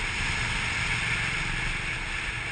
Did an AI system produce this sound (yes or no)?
no